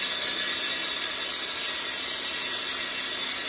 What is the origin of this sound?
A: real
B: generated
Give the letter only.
A